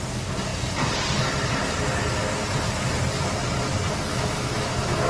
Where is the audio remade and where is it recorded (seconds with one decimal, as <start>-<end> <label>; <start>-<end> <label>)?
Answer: 0.0-4.1 recorded; 4.1-5.1 remade